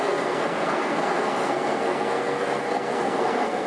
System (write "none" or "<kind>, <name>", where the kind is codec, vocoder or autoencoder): codec, SNAC